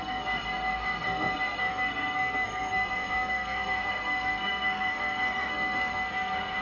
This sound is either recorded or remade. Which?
remade